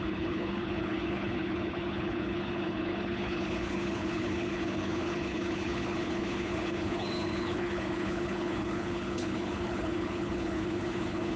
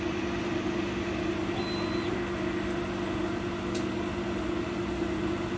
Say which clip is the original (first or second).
second